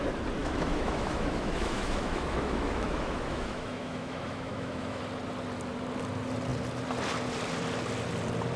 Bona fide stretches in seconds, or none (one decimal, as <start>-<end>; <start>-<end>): 0.0-0.4; 5.0-8.6